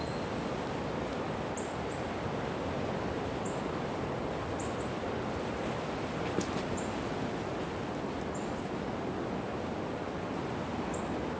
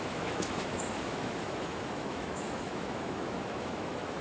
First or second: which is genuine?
first